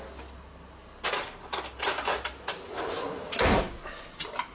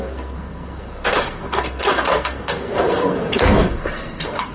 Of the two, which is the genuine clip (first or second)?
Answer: first